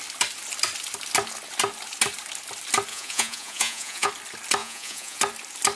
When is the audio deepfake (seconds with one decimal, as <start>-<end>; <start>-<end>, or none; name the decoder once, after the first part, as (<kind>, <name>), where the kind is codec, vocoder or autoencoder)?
2.9-4.1 (vocoder, Vocos); 4.6-5.2